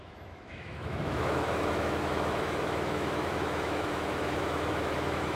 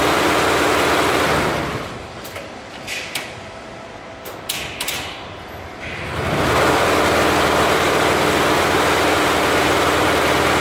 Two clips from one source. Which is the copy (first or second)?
first